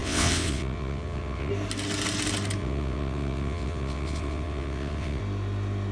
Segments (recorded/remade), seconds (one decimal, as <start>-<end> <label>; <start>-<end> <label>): 0.0-1.5 remade; 1.5-2.6 recorded; 2.6-5.2 remade; 5.2-5.9 recorded